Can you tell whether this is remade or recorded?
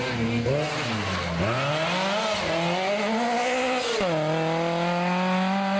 recorded